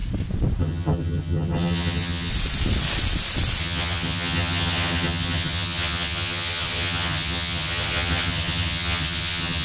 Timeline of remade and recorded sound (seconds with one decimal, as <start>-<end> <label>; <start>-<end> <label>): 0.0-0.6 recorded; 0.6-2.3 remade; 2.3-3.6 recorded; 3.6-9.6 remade